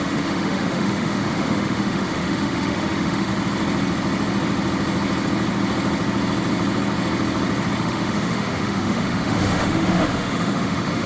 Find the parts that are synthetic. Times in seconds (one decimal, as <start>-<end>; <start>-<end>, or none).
0.0-3.3; 7.8-11.1